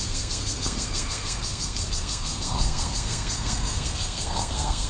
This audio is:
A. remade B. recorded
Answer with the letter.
A